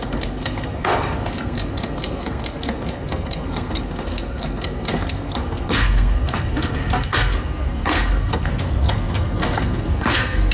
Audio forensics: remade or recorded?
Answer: remade